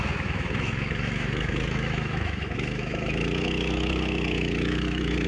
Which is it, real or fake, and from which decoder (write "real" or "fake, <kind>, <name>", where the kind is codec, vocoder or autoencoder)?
fake, autoencoder, DAC-VAE